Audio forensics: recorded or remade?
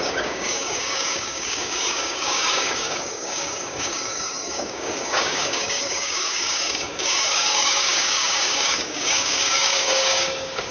remade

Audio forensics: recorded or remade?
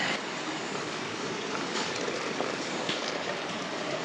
remade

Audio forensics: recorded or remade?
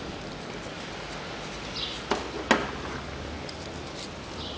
recorded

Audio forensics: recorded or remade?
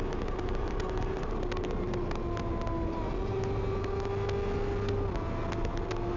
recorded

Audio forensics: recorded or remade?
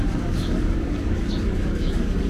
remade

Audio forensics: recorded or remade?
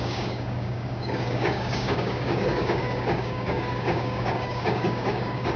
remade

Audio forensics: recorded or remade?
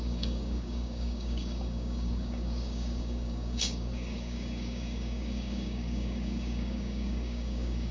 remade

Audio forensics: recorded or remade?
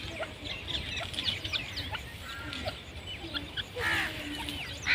recorded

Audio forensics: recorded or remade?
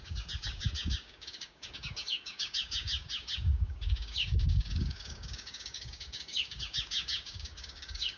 remade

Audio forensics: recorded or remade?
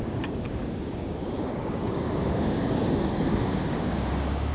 remade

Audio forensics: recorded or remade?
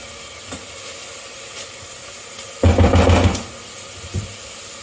recorded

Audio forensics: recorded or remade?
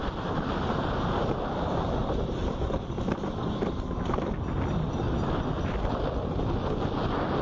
recorded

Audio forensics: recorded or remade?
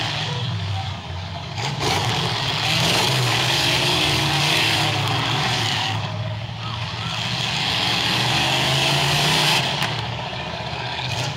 remade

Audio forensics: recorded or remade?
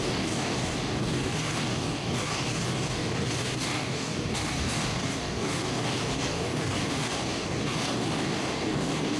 remade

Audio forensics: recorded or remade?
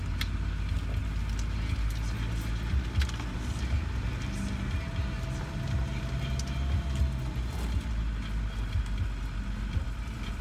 recorded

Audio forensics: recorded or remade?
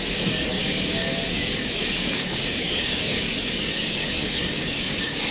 remade